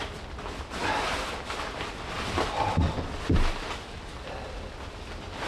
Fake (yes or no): no